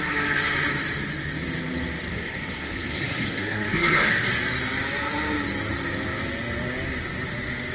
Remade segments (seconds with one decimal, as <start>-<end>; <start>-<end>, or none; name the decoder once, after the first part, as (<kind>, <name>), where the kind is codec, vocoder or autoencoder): 2.1-4.1 (codec, SNAC)